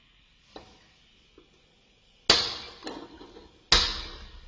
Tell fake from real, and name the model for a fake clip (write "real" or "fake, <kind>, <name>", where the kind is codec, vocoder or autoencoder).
real